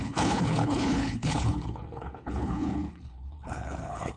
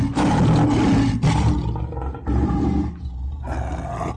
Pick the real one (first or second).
second